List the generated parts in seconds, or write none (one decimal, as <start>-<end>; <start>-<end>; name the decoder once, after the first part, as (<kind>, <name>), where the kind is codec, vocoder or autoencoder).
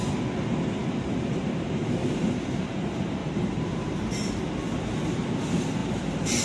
3.2-4.3 (vocoder, BigVGAN v2)